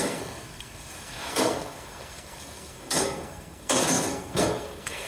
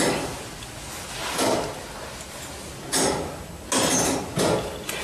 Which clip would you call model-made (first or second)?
first